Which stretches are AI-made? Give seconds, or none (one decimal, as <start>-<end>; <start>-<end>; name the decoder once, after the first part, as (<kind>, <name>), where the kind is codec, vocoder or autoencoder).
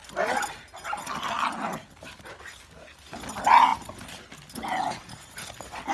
none